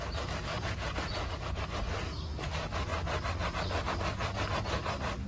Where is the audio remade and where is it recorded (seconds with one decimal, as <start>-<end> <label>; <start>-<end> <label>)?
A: 0.0-0.5 recorded; 0.5-1.3 remade; 1.3-5.3 recorded